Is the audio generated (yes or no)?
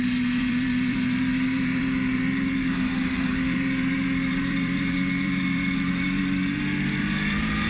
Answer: yes